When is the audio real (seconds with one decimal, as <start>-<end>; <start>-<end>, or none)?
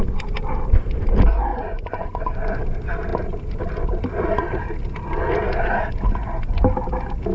0.0-1.5; 2.6-7.3